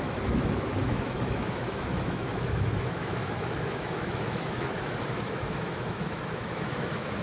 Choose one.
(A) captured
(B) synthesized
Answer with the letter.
B